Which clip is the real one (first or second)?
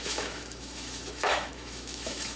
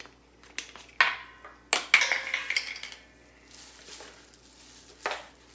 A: second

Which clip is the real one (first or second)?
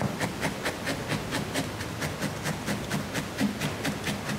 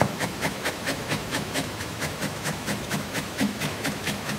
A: first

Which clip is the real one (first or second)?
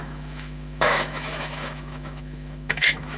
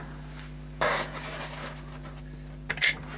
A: second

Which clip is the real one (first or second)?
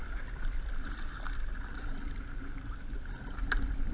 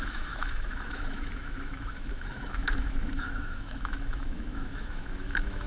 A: first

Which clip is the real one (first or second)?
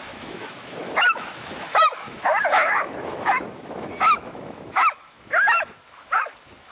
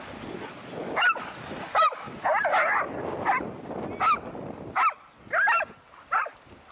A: second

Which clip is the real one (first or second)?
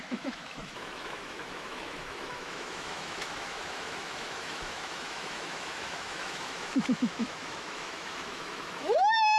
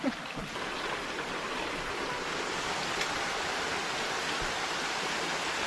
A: second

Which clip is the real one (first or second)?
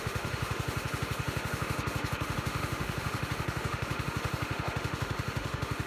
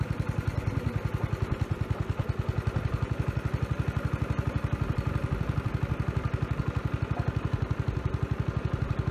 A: second